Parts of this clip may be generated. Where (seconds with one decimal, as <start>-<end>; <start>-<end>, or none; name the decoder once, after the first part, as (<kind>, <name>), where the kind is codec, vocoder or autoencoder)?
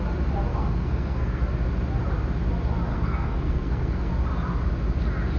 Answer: 0.5-1.4 (codec, SNAC); 2.9-4.1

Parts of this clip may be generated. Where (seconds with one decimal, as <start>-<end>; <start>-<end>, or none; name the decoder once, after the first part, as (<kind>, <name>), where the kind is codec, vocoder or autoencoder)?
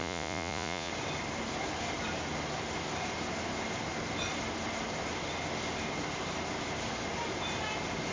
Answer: 0.0-0.9 (vocoder, Vocos)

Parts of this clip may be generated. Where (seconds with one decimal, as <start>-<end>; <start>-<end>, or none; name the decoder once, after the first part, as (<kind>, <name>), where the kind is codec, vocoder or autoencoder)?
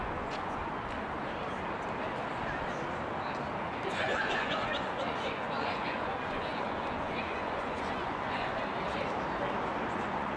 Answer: 0.0-0.6 (vocoder, Vocos); 3.9-8.6; 9.9-10.4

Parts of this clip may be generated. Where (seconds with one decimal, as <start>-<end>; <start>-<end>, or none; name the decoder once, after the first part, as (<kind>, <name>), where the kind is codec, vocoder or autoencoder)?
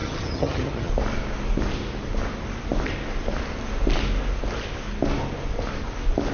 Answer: 0.0-0.9 (vocoder, HiFi-GAN)